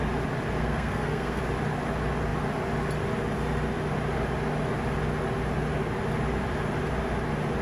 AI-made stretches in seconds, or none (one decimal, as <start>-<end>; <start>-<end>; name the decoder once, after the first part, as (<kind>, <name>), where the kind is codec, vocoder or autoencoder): 0.6-1.4 (codec, SNAC)